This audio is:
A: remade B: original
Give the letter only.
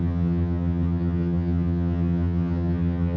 A